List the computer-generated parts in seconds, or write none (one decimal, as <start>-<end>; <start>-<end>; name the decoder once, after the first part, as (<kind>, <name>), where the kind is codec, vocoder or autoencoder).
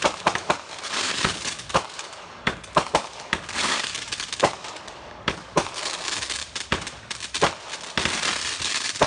0.0-6.4 (codec, DAC); 8.6-9.1